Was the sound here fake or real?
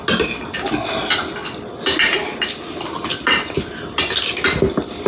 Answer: real